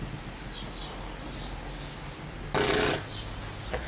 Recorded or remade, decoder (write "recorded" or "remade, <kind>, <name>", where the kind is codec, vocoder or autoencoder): recorded